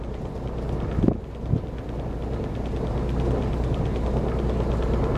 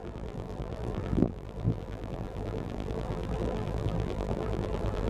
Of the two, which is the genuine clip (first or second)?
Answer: first